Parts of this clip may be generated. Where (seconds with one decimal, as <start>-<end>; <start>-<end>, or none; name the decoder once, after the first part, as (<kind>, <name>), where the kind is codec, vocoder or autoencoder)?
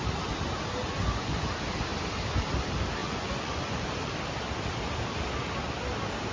0.8-1.5 (vocoder, Vocos); 3.0-4.1